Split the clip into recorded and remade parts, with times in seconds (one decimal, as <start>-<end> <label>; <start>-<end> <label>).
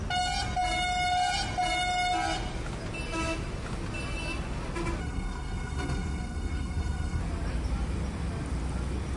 0.0-5.0 recorded; 5.0-7.2 remade; 7.2-9.2 recorded